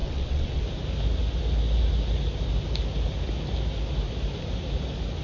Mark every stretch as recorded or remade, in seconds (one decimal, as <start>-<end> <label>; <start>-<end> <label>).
0.0-0.6 remade; 0.6-5.2 recorded

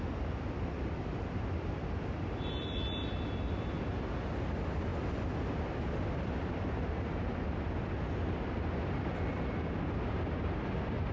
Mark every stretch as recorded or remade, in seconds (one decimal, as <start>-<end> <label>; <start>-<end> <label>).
0.0-11.1 recorded

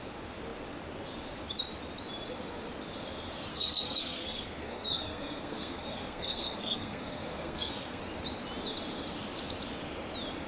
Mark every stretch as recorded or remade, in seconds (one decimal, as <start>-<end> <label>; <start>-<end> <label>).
0.0-3.5 recorded; 3.5-8.0 remade; 8.0-10.5 recorded

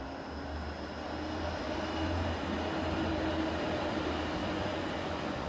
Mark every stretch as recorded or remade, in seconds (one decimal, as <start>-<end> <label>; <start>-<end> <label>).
0.0-4.4 recorded; 4.4-5.5 remade

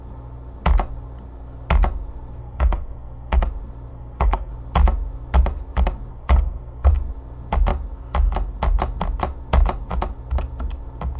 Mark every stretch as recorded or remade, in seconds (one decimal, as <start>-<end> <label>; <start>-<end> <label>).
0.0-2.4 recorded; 2.4-3.4 remade; 3.4-3.9 recorded; 3.9-4.5 remade; 4.5-6.1 recorded; 6.1-6.9 remade; 6.9-11.2 recorded

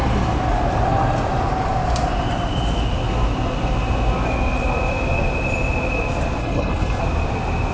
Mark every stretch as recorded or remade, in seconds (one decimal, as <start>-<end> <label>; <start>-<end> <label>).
0.0-6.4 recorded; 6.4-7.0 remade; 7.0-7.7 recorded